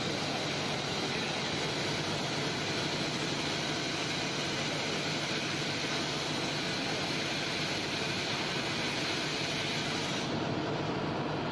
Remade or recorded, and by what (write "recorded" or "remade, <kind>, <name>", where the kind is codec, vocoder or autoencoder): recorded